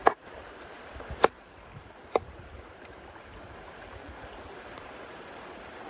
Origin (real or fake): fake